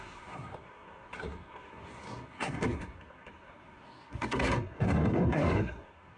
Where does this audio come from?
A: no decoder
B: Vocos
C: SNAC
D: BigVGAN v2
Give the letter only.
C